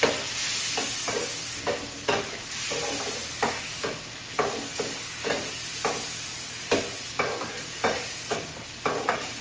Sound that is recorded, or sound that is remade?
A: recorded